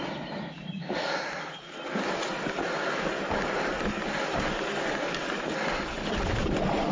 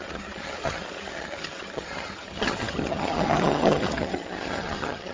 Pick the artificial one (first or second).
second